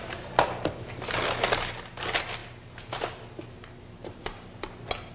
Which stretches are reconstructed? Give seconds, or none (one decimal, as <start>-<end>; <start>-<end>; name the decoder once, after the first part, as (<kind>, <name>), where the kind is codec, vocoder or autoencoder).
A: none